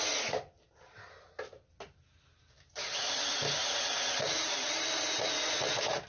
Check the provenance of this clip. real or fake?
real